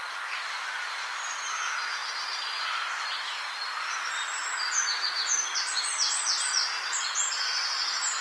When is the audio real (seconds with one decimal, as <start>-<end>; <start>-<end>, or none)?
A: 0.0-8.2